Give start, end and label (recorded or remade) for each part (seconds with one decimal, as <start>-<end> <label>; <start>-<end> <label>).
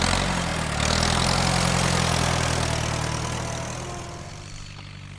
0.0-5.2 recorded